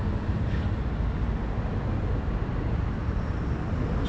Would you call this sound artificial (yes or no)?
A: no